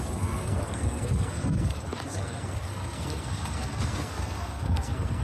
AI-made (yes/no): yes